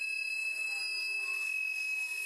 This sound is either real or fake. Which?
real